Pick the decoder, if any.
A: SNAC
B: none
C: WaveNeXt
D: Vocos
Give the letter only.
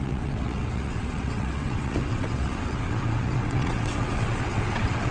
C